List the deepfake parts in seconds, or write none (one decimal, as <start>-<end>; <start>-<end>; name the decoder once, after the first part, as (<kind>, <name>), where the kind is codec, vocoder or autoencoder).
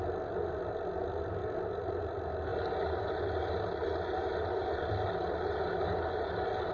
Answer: none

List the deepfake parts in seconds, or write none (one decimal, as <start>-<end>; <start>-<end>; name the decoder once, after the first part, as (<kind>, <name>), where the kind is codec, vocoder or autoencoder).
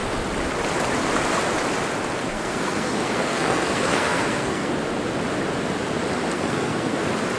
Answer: 2.2-4.7 (codec, SNAC); 6.3-7.0